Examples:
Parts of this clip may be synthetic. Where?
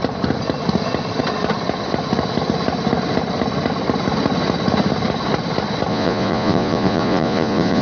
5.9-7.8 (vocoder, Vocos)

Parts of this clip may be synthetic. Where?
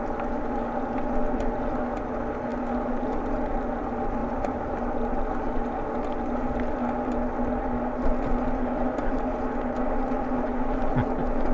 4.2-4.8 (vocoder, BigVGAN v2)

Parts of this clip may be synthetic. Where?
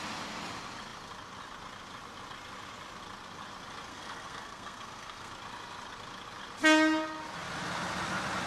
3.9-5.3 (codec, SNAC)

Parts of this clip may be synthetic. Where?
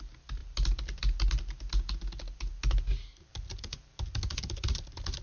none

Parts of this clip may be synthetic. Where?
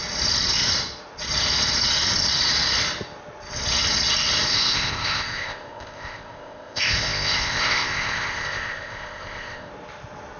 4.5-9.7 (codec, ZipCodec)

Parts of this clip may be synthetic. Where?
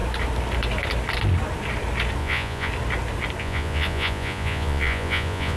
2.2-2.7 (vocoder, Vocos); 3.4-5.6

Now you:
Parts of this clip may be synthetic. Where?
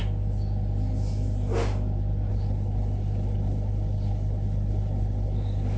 2.3-5.8 (codec, HILCodec)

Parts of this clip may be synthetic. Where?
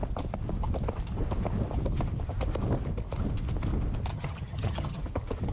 4.1-5.0 (vocoder, HiFi-GAN)